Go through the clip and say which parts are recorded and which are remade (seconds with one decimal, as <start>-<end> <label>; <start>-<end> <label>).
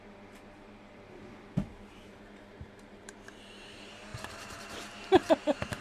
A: 0.0-1.2 remade; 1.2-1.7 recorded; 1.7-5.8 remade